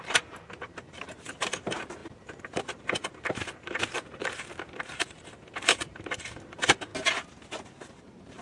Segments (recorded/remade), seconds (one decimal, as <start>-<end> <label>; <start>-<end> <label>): 0.0-6.9 remade; 6.9-8.0 recorded; 8.0-8.4 remade

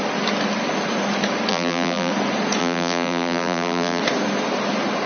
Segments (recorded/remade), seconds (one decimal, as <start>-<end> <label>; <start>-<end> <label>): 0.0-1.5 recorded; 1.5-2.1 remade; 2.1-2.6 recorded; 2.6-4.0 remade; 4.0-5.1 recorded